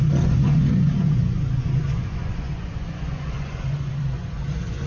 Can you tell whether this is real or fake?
fake